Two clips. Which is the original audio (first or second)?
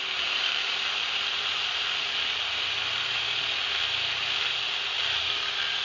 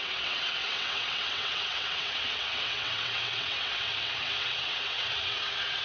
first